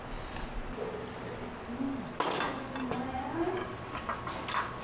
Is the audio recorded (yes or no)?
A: yes